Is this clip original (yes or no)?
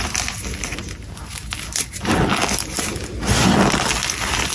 yes